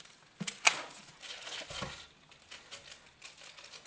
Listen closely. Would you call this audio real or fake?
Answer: real